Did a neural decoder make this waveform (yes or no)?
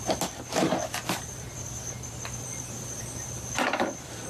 yes